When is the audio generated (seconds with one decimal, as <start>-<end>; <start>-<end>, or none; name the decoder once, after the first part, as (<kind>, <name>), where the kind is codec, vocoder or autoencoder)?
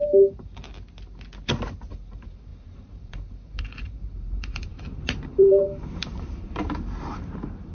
0.0-0.6 (vocoder, BigVGAN v2); 1.9-7.7